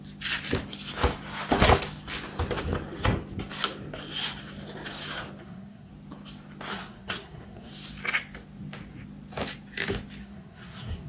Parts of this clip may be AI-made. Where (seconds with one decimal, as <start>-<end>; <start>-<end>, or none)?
5.4-5.9; 6.7-7.7; 10.2-11.1